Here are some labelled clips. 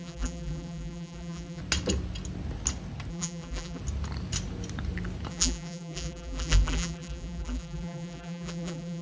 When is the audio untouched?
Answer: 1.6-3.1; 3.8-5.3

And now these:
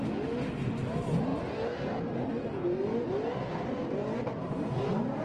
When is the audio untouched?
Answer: 0.0-5.2